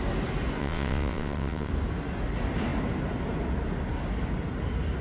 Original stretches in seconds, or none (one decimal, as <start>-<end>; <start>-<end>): 0.0-0.6; 1.7-5.0